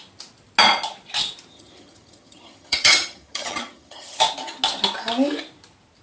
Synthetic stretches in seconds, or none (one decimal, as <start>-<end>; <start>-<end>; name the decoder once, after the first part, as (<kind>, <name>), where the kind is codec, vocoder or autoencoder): 1.5-4.2 (vocoder, HiFi-GAN)